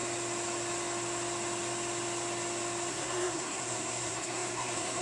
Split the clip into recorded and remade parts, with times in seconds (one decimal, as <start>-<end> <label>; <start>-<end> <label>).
0.0-2.9 recorded; 2.9-5.0 remade